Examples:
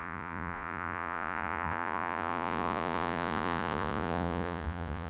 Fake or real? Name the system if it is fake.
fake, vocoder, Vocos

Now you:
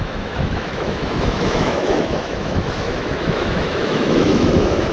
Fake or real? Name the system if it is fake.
fake, autoencoder, DAC-VAE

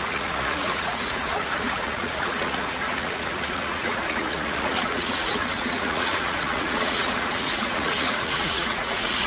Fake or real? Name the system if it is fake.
fake, vocoder, Vocos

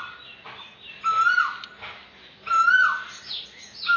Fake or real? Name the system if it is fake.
real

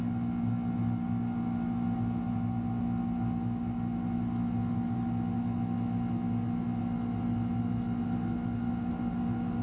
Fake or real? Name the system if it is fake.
real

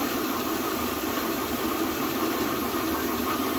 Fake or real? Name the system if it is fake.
fake, vocoder, BigVGAN v2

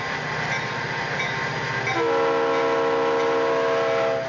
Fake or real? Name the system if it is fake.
real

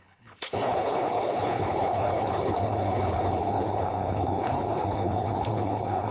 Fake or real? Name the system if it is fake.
fake, codec, HILCodec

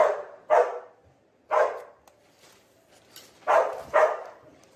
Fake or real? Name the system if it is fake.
real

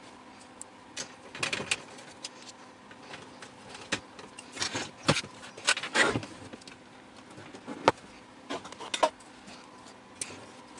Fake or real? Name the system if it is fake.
real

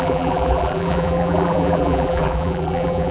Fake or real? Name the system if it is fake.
fake, vocoder, BigVGAN v2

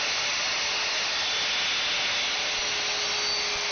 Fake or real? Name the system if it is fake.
real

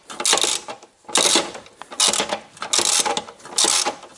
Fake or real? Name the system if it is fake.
real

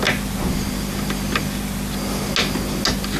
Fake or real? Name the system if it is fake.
real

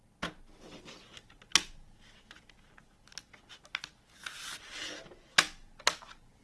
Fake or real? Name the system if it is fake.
real